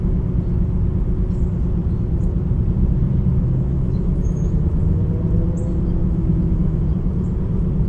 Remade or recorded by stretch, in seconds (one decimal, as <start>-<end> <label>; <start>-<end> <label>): 0.0-3.3 recorded; 3.3-5.0 remade; 5.0-6.0 recorded; 6.0-6.8 remade; 6.8-7.9 recorded